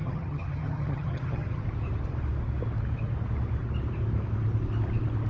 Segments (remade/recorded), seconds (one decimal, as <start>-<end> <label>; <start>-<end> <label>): 0.0-1.6 remade; 1.6-5.3 recorded